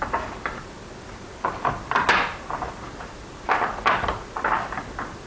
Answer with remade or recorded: recorded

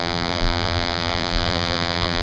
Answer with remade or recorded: remade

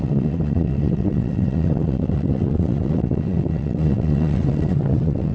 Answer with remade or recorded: remade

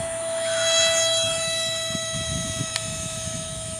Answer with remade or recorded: remade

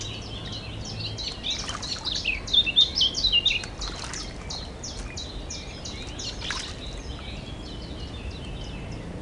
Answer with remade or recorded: recorded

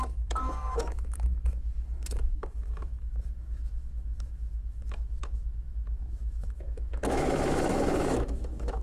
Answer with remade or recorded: remade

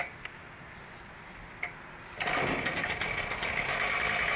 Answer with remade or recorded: recorded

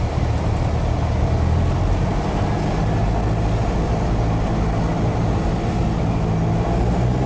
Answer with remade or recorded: recorded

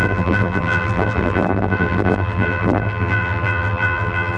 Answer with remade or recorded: remade